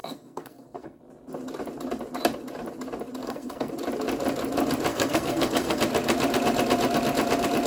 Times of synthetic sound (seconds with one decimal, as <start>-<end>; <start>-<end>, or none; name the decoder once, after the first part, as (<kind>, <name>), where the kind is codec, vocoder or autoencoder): 0.0-1.0 (codec, SNAC); 3.2-3.7; 4.9-5.8